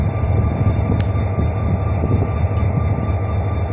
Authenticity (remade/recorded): recorded